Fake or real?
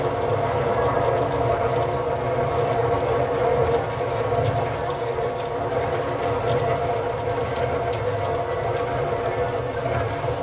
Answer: real